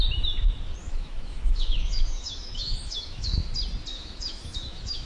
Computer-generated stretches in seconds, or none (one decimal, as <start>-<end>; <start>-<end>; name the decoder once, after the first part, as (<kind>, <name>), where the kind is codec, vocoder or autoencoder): 0.8-3.5 (autoencoder, DAC-VAE); 3.9-5.1

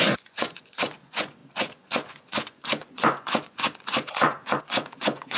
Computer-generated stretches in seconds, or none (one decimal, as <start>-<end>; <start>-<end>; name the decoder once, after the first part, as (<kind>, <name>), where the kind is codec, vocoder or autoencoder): 0.0-5.4 (vocoder, Vocos)

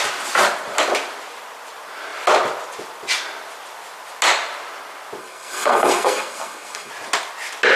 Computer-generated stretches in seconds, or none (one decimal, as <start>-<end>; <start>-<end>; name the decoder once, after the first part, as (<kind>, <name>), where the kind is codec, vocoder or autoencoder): 5.2-6.9 (codec, SNAC)